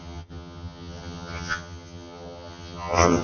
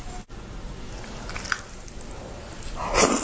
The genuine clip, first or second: second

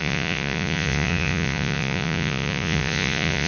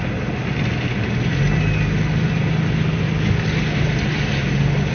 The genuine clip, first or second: second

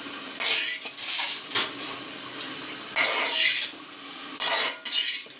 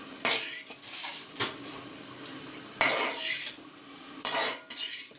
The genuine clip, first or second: first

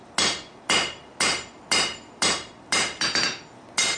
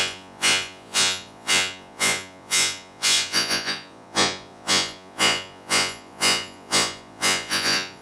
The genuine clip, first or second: first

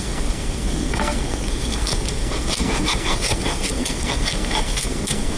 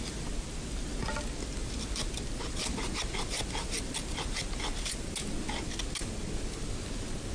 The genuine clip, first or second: second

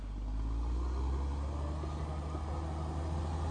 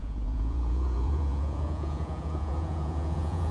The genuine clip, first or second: first